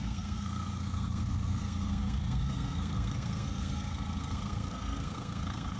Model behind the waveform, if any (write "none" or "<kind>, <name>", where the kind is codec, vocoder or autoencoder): codec, SNAC